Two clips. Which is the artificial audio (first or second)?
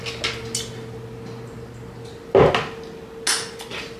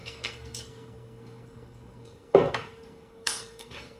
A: second